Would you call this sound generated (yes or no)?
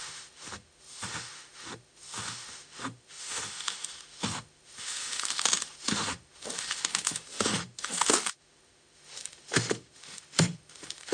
yes